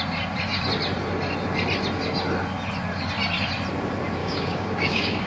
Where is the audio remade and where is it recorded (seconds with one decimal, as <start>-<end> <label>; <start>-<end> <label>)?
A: 0.0-4.2 recorded; 4.2-5.3 remade